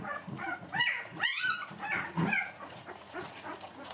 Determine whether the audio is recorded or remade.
remade